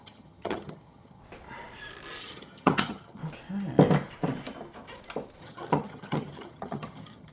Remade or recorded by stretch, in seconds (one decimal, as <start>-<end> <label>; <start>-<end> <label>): 0.0-1.2 remade; 1.2-2.2 recorded; 2.2-3.2 remade; 3.2-5.4 recorded; 5.4-7.3 remade